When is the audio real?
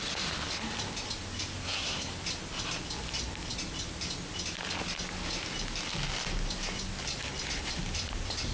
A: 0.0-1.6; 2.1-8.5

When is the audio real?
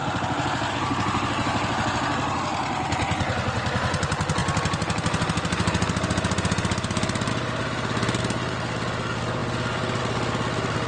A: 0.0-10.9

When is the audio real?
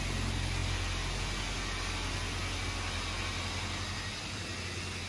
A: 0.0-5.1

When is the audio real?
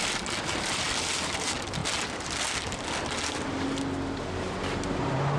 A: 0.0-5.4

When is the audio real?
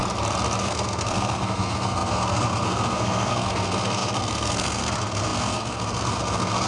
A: 0.0-0.6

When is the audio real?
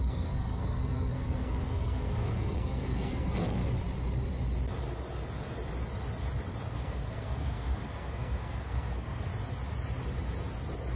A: 3.6-6.7; 9.3-11.0